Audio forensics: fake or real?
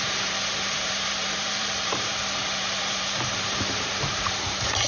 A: fake